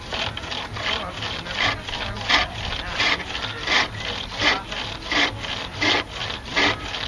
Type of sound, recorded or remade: recorded